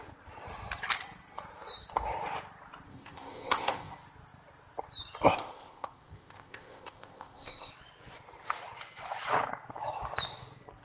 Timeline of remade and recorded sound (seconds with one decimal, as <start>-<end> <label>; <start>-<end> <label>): 0.0-2.9 recorded; 2.9-3.9 remade; 3.9-5.3 recorded; 5.3-7.7 remade; 7.7-10.8 recorded